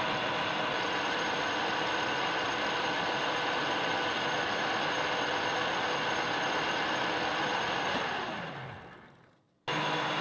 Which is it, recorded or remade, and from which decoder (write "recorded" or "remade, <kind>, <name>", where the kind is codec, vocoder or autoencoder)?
recorded